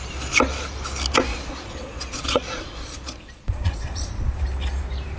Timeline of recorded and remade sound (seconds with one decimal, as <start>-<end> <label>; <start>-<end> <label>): 0.0-1.3 recorded; 1.3-4.4 remade; 4.4-5.2 recorded

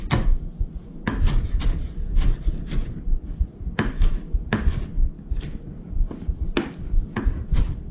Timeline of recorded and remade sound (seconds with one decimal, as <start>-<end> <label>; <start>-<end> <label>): 0.0-7.9 recorded

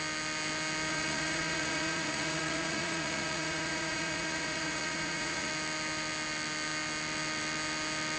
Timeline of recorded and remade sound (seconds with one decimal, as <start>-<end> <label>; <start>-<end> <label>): 0.0-0.9 recorded; 0.9-5.5 remade; 5.5-8.2 recorded

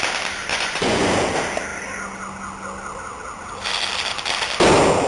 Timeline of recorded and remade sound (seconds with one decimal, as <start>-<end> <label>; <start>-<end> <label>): 0.0-0.5 recorded; 0.5-1.1 remade; 1.1-5.1 recorded

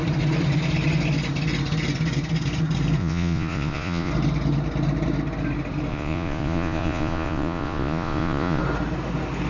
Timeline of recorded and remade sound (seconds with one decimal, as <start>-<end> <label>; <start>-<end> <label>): 0.0-3.0 recorded; 3.0-4.1 remade; 4.1-5.9 recorded; 5.9-8.6 remade; 8.6-9.5 recorded

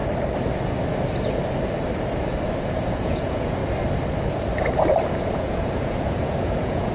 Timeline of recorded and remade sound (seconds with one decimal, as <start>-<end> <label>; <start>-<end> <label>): 0.0-2.6 recorded; 2.6-3.6 remade; 3.6-5.1 recorded; 5.1-6.9 remade

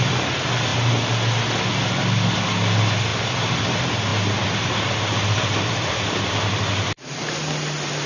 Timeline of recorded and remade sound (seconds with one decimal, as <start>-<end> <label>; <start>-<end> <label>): 0.0-8.1 recorded

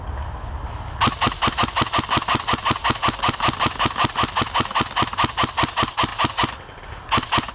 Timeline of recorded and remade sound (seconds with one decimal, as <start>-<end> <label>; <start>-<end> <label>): 0.0-7.5 recorded